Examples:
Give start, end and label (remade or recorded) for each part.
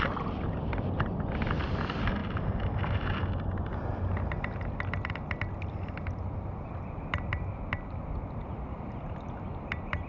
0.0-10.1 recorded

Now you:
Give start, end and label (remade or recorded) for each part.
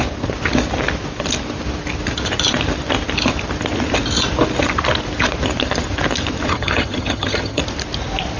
0.0-6.5 recorded; 6.5-7.6 remade; 7.6-8.4 recorded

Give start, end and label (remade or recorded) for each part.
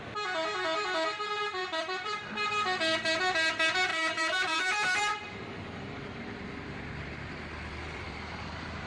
0.0-1.6 recorded; 1.6-2.3 remade; 2.3-3.9 recorded; 3.9-8.9 remade